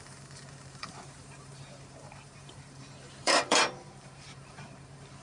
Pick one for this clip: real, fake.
fake